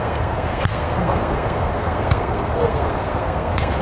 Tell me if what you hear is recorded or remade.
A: remade